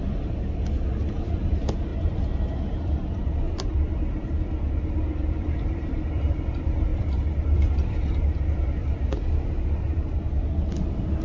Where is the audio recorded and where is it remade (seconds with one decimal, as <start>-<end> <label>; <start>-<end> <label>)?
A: 0.0-1.9 recorded; 1.9-6.5 remade; 6.5-6.9 recorded; 6.9-9.3 remade; 9.3-11.2 recorded